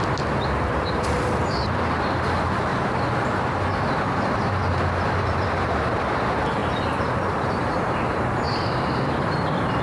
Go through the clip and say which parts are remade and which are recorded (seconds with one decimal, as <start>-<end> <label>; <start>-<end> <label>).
0.0-2.7 remade; 2.7-3.2 recorded; 3.2-9.8 remade